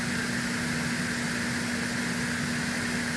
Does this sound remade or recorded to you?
recorded